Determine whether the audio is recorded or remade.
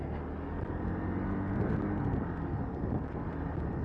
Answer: recorded